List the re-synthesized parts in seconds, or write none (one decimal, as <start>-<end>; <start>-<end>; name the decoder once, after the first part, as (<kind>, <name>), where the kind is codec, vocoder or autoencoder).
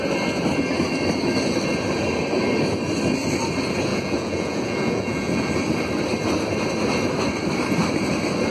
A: 3.9-5.5 (vocoder, Vocos)